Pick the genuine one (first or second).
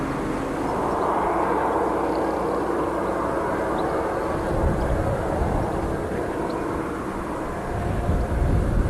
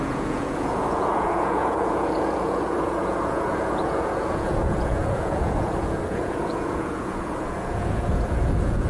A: first